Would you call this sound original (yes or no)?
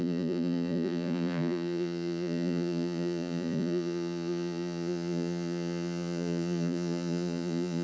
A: no